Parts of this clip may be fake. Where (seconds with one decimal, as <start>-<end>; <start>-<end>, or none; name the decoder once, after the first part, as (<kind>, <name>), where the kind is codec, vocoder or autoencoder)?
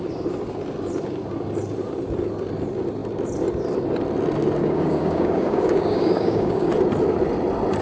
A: 4.6-6.7 (codec, DAC)